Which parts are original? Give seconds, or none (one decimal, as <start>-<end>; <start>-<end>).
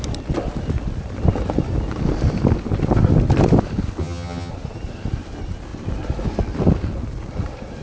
0.0-4.0; 4.5-7.8